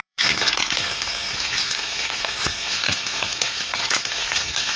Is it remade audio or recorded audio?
remade